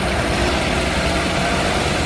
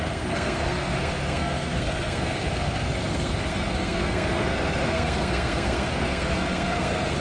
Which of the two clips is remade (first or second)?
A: second